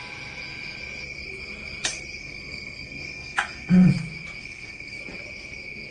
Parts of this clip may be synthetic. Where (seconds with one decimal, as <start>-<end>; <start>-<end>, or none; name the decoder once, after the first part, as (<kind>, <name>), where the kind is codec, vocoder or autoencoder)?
2.2-3.9 (codec, SNAC); 4.4-5.0